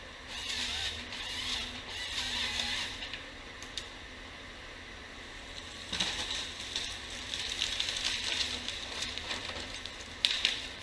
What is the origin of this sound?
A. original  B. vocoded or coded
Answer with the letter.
B